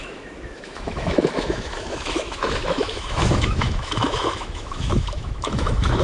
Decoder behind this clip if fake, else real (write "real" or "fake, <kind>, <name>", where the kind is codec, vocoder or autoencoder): fake, autoencoder, DAC-VAE